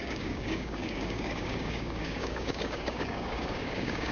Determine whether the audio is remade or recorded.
remade